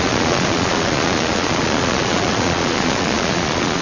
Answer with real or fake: fake